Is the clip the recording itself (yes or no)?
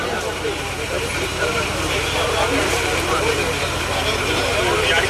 no